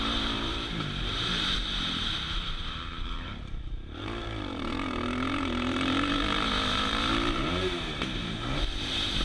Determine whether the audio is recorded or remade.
remade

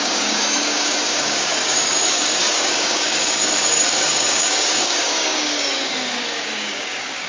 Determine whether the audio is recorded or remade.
remade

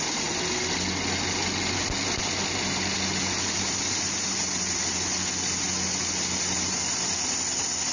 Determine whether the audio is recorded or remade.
recorded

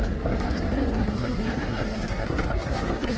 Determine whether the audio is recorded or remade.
remade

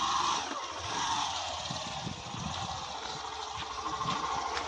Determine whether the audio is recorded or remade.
remade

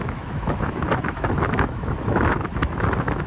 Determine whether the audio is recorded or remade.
remade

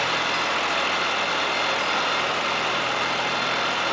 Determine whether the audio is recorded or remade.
recorded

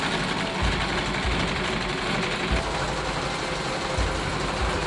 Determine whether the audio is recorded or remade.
recorded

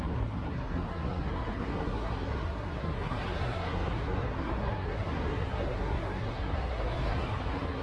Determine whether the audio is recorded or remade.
remade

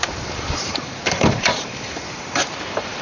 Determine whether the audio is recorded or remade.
remade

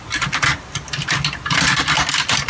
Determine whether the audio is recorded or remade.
recorded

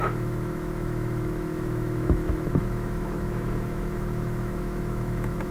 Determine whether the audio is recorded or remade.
remade